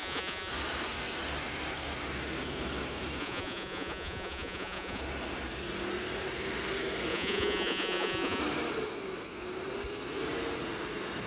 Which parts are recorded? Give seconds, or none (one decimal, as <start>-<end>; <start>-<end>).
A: 0.5-3.2; 5.0-7.1; 8.4-11.3